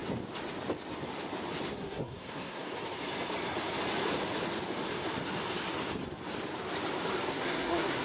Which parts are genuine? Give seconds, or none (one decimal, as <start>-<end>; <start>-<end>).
0.0-1.7; 2.7-7.3